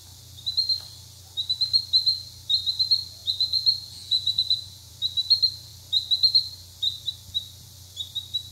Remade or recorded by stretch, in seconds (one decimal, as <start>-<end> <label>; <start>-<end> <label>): 0.0-3.2 recorded; 3.2-4.9 remade; 4.9-8.5 recorded